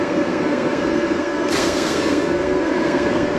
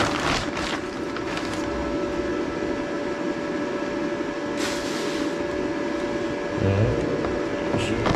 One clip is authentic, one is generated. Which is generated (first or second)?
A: first